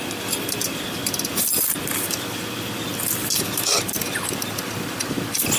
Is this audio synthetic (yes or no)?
no